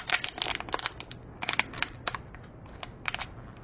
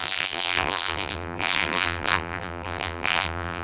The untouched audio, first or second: first